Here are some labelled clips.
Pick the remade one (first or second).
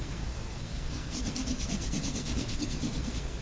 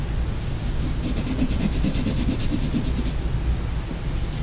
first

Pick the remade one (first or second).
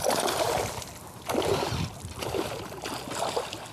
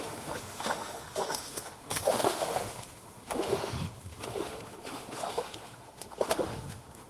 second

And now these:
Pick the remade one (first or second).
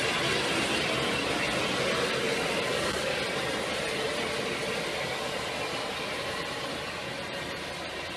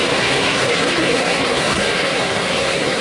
second